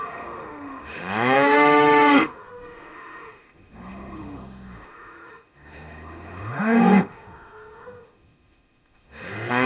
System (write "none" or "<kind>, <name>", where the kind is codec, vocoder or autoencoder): autoencoder, DAC-VAE